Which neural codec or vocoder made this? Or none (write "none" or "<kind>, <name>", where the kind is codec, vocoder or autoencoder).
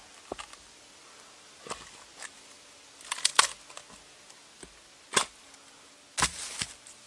none